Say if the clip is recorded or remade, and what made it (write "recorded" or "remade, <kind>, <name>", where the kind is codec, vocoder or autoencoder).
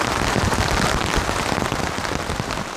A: recorded